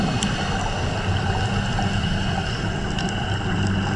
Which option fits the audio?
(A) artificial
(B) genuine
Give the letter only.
B